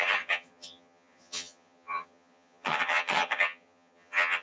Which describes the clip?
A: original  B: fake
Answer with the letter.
B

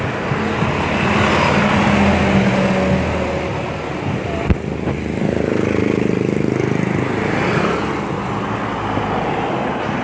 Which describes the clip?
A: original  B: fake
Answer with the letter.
A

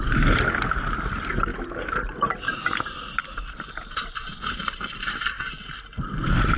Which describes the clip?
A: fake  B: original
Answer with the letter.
B